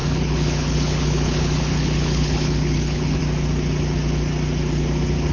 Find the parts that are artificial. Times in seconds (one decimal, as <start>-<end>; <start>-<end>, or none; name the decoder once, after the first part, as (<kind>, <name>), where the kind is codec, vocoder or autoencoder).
0.0-3.2 (codec, HILCodec)